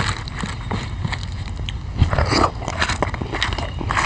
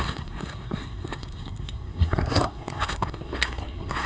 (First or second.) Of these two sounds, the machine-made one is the second